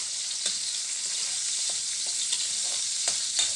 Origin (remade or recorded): remade